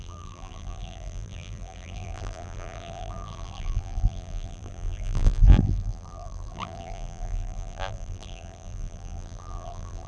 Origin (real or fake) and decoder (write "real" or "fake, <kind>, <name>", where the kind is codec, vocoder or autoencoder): fake, vocoder, BigVGAN v2